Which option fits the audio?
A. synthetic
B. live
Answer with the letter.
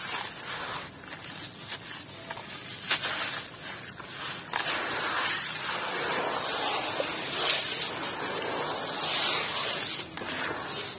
B